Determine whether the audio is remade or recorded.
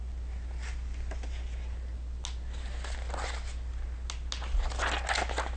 recorded